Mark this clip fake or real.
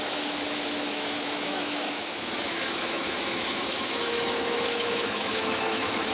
fake